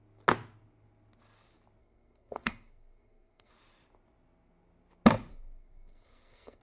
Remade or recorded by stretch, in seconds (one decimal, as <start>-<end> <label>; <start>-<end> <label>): 0.0-1.8 recorded; 1.8-3.5 remade; 3.5-5.3 recorded; 5.3-6.6 remade